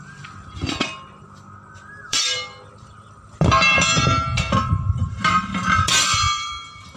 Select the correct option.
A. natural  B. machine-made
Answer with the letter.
B